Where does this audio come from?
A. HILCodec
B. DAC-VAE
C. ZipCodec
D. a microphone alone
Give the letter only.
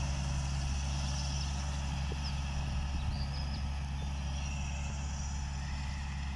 D